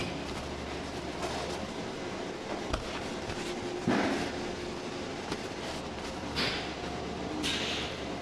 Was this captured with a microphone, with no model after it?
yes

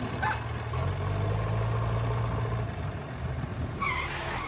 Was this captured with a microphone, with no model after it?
yes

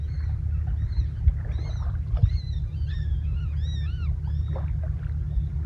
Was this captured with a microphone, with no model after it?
yes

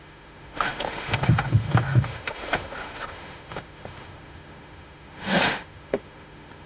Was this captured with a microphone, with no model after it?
no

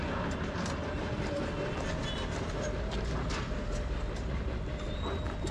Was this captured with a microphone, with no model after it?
yes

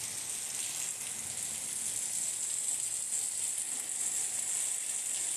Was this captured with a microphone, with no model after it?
yes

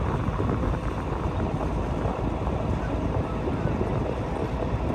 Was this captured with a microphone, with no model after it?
yes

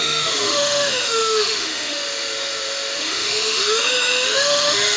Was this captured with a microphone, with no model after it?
no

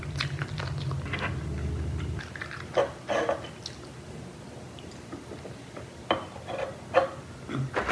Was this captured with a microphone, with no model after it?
yes